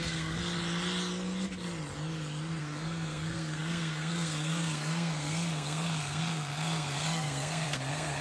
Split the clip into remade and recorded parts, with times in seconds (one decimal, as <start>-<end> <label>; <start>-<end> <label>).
0.0-0.4 remade; 0.4-2.6 recorded; 2.6-8.2 remade